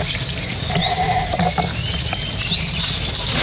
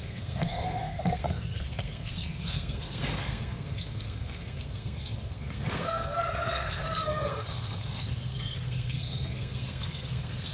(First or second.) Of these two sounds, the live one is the first